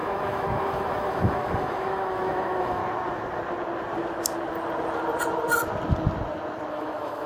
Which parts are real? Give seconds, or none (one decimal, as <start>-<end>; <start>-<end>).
2.8-6.7

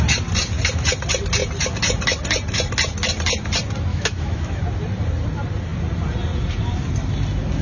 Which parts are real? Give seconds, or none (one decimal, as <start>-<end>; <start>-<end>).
0.0-3.9; 4.6-7.6

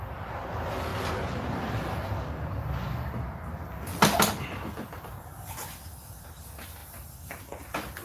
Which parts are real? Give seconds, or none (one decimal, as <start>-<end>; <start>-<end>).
0.0-8.0

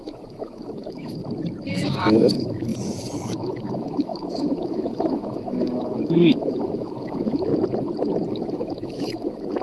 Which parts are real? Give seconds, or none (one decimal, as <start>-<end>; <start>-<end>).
1.2-1.7; 2.7-3.2; 7.5-8.3

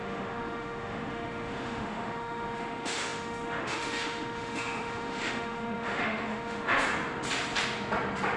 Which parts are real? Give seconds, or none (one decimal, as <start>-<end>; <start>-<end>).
6.9-8.4

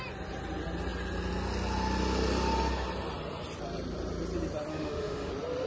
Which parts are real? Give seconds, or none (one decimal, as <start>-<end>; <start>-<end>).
0.0-4.7; 5.3-5.7